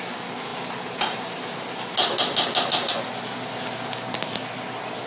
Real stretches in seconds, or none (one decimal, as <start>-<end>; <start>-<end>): 0.0-5.1

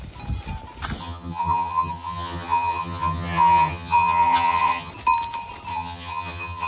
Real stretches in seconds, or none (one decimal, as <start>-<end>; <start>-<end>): 0.0-1.0; 4.9-5.7

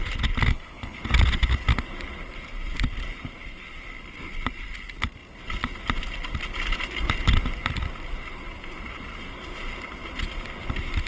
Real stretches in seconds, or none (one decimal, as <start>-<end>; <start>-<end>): 0.0-0.5; 1.0-11.1

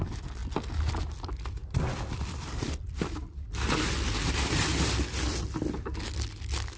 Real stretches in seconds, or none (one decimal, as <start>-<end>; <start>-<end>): 0.0-6.8

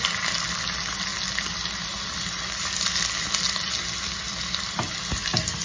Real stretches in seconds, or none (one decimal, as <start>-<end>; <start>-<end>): 0.0-5.6